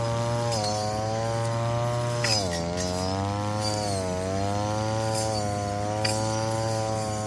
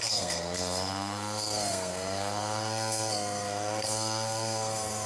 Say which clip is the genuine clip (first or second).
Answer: first